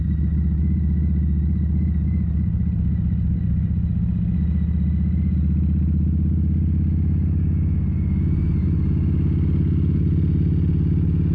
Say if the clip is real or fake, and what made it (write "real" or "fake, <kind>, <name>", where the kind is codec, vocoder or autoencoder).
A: real